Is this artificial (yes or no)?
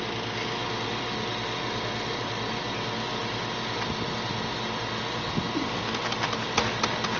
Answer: no